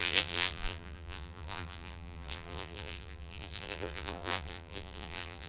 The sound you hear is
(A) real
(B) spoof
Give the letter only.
B